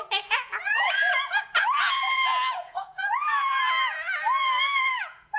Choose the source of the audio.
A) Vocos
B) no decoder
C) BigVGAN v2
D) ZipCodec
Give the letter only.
A